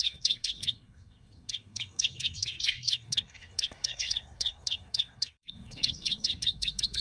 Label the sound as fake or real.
fake